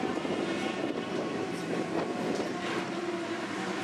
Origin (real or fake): fake